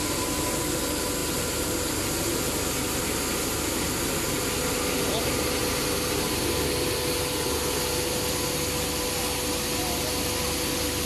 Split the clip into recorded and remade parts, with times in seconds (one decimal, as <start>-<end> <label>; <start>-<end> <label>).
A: 0.0-11.1 recorded